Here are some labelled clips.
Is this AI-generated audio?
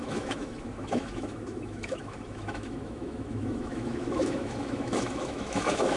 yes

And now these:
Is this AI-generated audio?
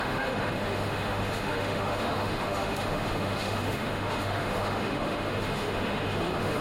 yes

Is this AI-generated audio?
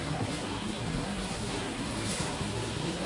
yes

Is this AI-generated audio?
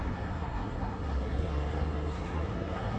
yes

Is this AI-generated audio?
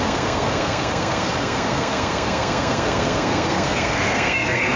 yes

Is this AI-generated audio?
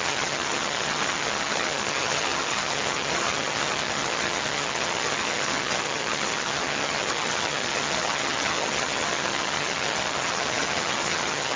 yes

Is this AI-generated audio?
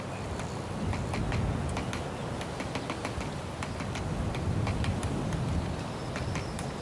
no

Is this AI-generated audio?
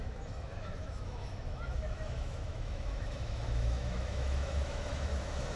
yes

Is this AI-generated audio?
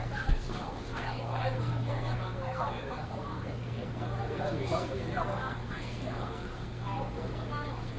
yes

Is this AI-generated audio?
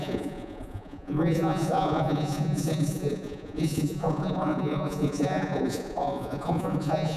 yes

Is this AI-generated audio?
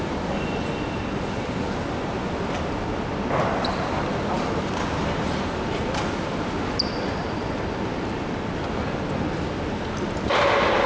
no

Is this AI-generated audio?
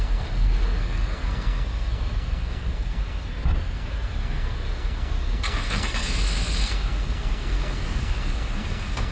yes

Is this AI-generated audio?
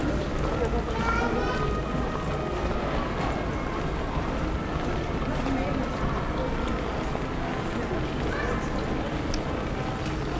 no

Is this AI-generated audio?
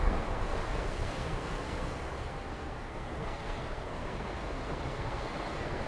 yes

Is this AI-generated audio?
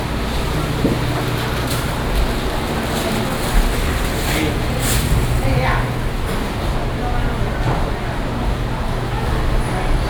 no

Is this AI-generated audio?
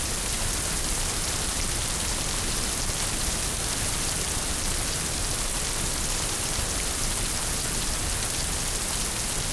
no